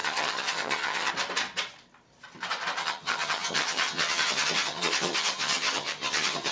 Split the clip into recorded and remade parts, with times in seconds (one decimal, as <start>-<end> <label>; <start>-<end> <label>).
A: 0.0-1.1 remade; 1.1-2.8 recorded; 2.8-6.5 remade